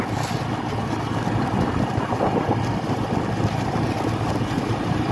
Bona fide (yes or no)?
yes